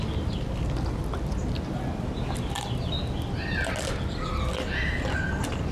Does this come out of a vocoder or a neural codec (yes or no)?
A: no